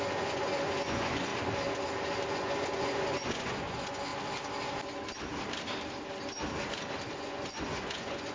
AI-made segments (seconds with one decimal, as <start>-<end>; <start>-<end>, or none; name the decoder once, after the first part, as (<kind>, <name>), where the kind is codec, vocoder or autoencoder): 0.0-1.3 (vocoder, Vocos); 2.3-4.1; 7.1-8.3